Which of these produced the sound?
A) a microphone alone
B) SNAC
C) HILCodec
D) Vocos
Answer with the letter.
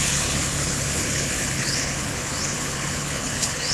C